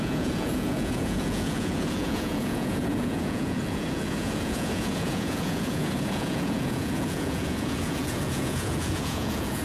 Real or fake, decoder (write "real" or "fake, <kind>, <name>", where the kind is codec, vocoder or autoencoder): fake, vocoder, Vocos